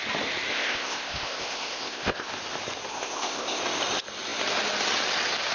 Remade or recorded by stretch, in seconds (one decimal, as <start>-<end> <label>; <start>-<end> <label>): 0.0-0.5 recorded; 0.5-2.3 remade; 2.3-2.9 recorded; 2.9-3.6 remade; 3.6-5.5 recorded